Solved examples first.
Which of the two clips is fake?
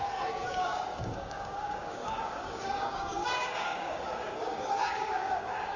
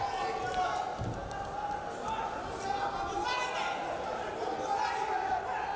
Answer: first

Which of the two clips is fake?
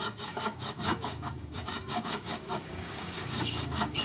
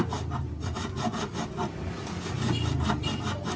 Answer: first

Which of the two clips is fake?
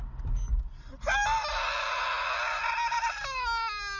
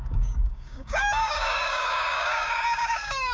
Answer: second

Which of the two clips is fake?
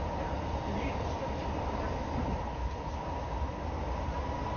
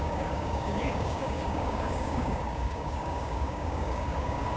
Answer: second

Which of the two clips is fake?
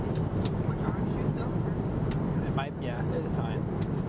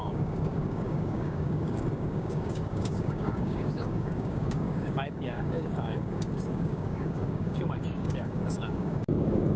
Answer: second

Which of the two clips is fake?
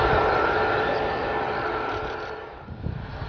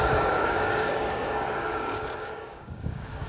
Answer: second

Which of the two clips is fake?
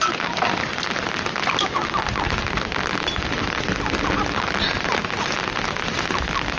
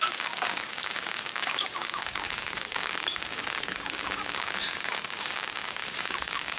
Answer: second